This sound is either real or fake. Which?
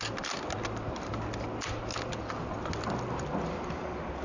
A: real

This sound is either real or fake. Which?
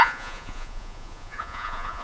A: fake